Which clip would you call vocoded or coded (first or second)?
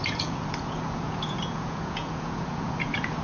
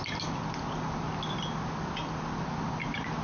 first